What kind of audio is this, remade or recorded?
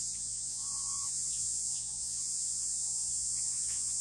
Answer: remade